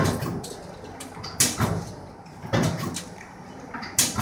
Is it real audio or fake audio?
real